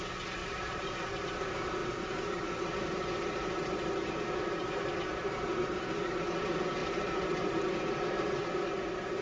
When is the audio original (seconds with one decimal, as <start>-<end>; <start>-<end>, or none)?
0.0-0.4; 1.3-9.2